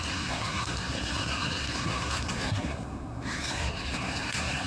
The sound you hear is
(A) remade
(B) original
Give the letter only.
A